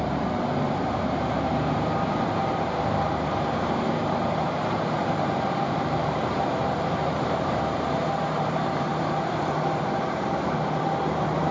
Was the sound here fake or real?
fake